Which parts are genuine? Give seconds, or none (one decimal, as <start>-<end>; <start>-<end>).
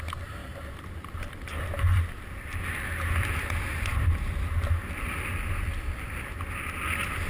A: 0.0-0.4; 1.3-1.9; 6.3-7.3